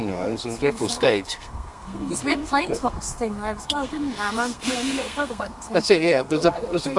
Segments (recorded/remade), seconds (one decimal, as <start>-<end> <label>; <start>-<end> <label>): 0.0-7.0 remade